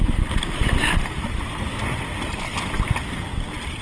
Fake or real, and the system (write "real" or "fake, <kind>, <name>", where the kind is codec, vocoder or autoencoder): real